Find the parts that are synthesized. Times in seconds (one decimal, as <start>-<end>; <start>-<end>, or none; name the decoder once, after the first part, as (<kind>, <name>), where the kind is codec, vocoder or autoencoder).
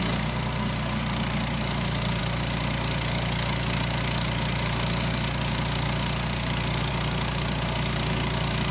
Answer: none